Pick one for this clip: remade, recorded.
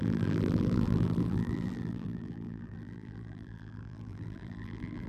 remade